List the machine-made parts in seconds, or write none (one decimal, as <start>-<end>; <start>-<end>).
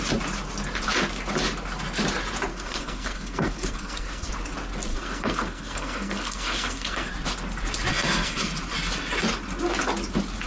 2.5-4.3; 4.9-7.1; 7.9-8.5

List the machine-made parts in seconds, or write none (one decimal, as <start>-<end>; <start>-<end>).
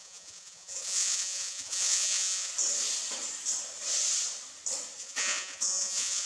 0.0-2.5; 5.0-6.3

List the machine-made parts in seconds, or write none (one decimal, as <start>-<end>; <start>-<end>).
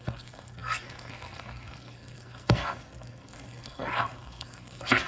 0.0-5.1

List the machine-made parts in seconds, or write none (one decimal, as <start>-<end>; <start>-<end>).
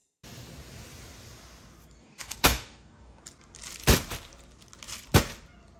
2.0-3.2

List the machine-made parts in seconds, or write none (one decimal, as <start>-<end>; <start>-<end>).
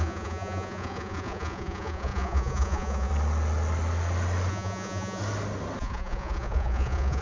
0.0-3.1; 4.5-5.2; 5.8-7.2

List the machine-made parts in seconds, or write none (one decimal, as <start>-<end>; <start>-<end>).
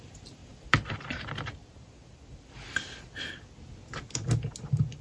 0.4-3.2